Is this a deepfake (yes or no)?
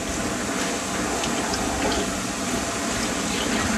no